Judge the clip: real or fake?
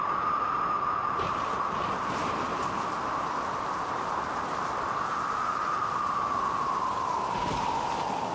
real